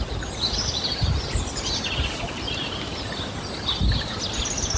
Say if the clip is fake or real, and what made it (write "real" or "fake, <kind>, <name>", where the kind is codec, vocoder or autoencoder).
real